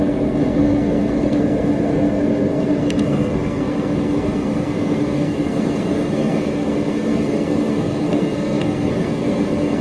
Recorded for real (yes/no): no